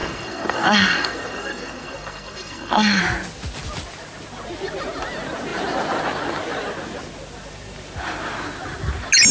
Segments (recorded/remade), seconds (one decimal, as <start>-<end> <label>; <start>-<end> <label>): 0.0-3.0 remade; 3.0-9.3 recorded

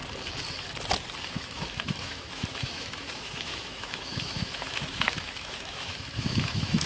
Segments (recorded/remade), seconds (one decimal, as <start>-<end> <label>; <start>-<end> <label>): 0.0-1.3 recorded; 1.3-6.9 remade

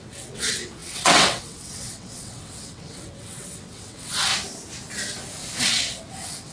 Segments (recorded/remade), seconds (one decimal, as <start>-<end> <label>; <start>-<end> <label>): 0.0-4.3 remade; 4.3-5.6 recorded; 5.6-6.5 remade

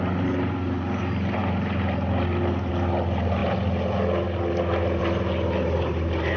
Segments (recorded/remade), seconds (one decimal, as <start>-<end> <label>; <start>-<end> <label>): 0.0-6.4 recorded

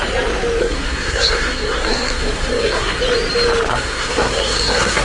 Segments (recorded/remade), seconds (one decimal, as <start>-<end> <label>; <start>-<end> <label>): 0.0-0.6 recorded; 0.6-3.0 remade; 3.0-3.7 recorded; 3.7-5.0 remade

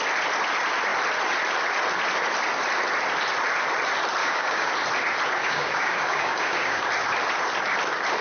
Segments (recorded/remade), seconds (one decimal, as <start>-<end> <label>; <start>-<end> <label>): 0.0-4.2 recorded; 4.2-4.7 remade; 4.7-5.4 recorded; 5.4-6.9 remade; 6.9-8.2 recorded

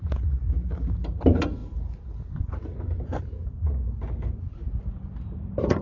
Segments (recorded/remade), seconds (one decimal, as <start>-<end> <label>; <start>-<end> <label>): 0.0-5.8 recorded